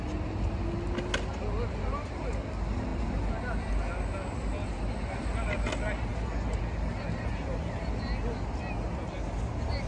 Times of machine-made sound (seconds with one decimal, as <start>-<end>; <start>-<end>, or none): none